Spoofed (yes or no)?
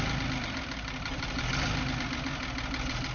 no